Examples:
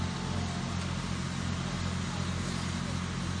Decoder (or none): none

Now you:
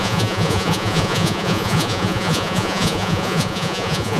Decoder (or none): vocoder, Vocos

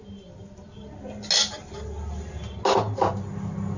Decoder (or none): none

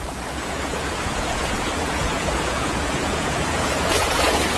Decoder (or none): vocoder, Vocos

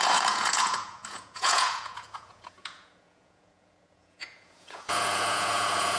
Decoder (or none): vocoder, Vocos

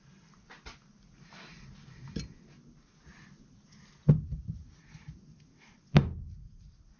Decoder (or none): none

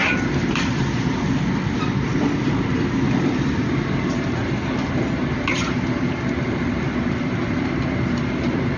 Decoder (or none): none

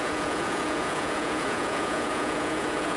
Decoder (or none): vocoder, Vocos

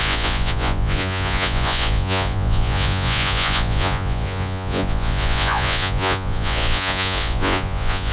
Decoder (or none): vocoder, Vocos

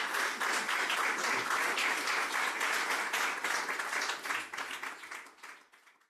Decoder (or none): none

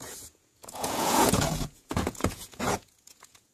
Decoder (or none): vocoder, Vocos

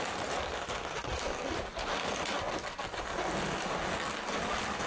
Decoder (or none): none